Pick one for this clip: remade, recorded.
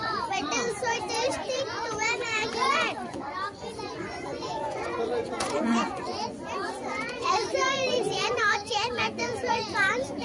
remade